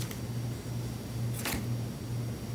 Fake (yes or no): no